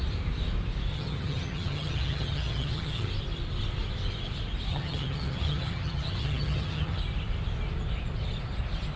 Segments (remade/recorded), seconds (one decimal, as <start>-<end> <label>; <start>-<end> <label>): 0.0-0.9 recorded; 0.9-3.1 remade; 3.1-4.7 recorded; 4.7-7.0 remade; 7.0-9.0 recorded

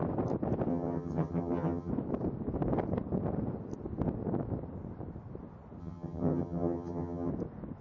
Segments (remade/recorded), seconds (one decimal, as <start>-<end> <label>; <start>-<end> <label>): 0.0-0.7 recorded; 0.7-1.9 remade; 1.9-5.8 recorded; 5.8-7.3 remade; 7.3-7.8 recorded

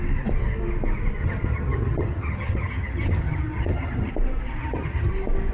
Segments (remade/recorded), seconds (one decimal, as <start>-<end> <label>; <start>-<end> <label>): 0.0-1.2 recorded; 1.2-4.1 remade; 4.1-4.6 recorded; 4.6-5.1 remade; 5.1-5.5 recorded

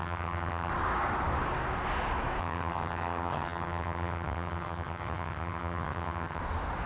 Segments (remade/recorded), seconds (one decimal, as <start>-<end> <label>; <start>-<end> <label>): 0.0-0.7 remade; 0.7-2.4 recorded; 2.4-6.4 remade; 6.4-6.9 recorded

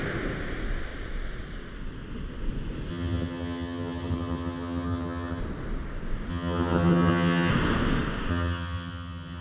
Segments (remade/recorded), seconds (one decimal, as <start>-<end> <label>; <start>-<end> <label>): 0.0-2.9 recorded; 2.9-5.4 remade; 5.4-6.3 recorded; 6.3-7.5 remade; 7.5-8.3 recorded; 8.3-9.4 remade